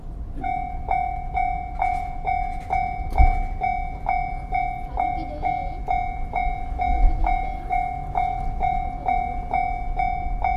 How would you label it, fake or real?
real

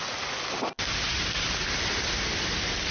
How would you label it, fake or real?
real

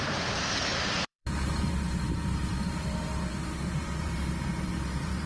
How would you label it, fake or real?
fake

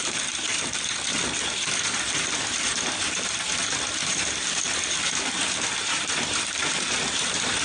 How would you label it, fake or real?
fake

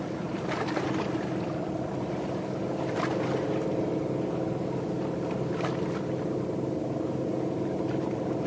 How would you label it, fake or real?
real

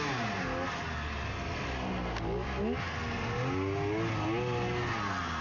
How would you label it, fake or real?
real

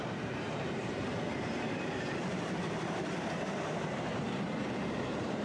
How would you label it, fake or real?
fake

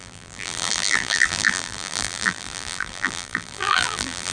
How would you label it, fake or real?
fake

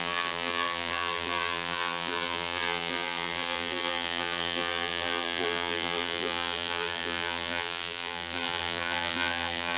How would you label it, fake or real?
fake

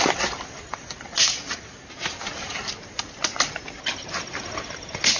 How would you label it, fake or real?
real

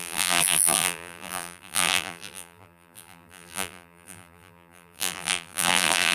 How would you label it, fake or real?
fake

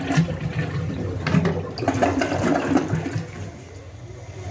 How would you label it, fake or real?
real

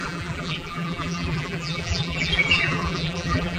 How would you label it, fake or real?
fake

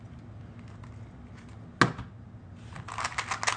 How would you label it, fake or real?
real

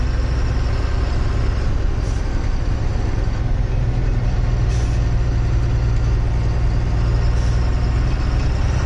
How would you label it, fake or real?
real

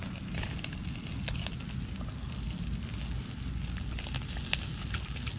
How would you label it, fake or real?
real